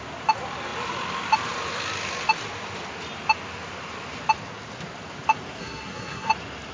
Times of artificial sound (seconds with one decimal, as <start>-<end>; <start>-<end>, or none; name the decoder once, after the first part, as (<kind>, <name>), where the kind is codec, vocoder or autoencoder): 5.6-6.3 (codec, SNAC)